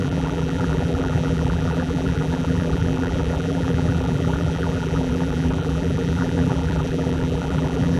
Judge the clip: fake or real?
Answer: fake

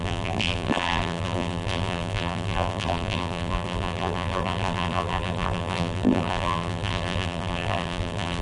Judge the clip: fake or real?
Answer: fake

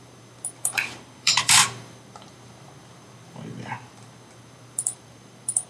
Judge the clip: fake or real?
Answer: fake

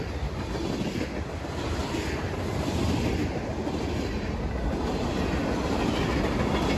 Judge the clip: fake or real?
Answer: real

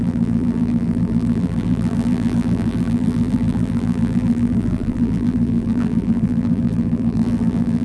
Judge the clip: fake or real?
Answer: fake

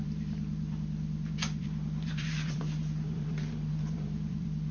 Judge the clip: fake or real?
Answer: fake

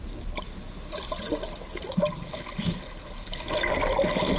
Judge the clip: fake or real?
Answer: real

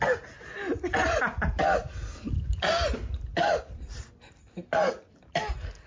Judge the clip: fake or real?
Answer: real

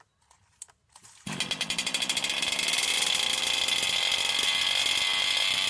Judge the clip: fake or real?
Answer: real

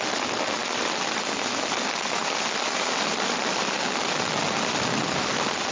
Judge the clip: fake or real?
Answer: real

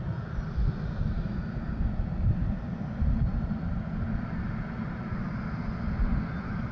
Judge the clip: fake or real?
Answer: real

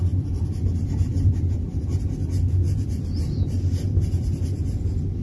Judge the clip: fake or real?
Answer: fake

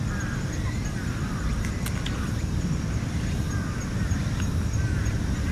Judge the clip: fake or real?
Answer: real